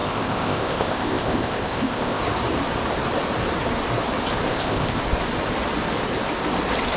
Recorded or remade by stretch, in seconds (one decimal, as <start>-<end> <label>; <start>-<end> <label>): 0.0-2.2 remade; 2.2-4.5 recorded; 4.5-5.0 remade; 5.0-7.0 recorded